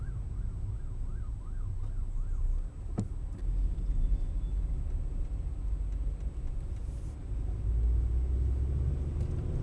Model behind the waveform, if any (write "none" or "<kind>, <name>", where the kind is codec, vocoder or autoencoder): none